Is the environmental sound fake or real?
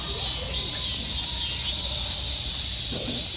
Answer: real